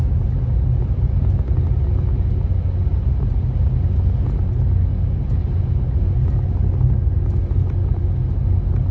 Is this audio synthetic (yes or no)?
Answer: no